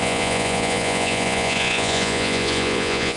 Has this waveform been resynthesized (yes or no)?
yes